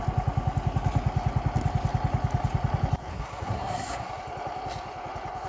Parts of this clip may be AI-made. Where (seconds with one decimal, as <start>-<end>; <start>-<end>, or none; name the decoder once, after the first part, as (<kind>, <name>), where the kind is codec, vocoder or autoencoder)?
3.1-4.1 (codec, SNAC)